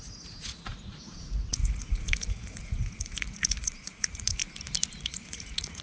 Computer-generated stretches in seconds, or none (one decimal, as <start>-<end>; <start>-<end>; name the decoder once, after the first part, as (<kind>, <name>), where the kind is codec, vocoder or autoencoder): 0.0-4.4 (vocoder, Vocos); 5.0-5.8